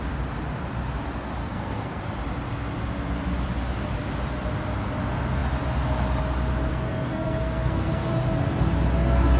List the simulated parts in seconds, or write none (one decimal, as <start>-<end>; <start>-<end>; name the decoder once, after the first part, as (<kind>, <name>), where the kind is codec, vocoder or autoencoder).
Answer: 1.4-2.0 (codec, SNAC); 6.7-8.1